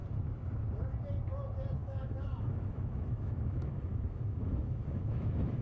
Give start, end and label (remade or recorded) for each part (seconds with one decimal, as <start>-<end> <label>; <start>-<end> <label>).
0.0-1.8 recorded; 1.8-5.6 remade